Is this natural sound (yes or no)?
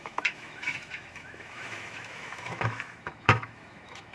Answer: no